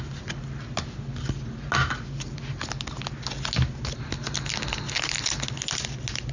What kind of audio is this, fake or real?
real